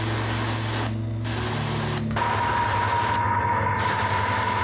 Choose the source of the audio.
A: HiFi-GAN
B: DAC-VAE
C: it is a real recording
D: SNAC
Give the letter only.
C